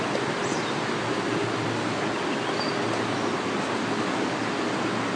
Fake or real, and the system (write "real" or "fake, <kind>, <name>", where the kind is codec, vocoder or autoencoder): real